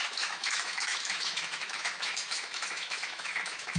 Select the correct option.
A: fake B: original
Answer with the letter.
A